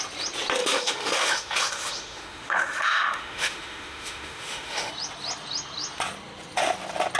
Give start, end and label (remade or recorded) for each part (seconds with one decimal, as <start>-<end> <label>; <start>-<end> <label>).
0.0-0.6 recorded; 0.6-4.9 remade; 4.9-7.2 recorded